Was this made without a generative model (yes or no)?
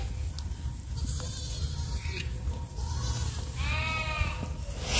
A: yes